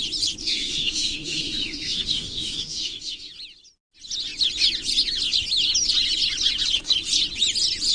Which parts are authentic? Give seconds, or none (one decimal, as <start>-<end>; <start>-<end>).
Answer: 0.0-0.4; 3.3-7.9